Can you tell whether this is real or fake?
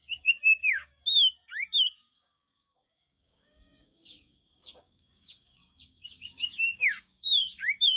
fake